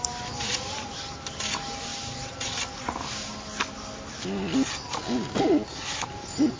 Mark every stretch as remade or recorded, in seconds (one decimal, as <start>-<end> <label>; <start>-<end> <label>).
0.0-6.6 recorded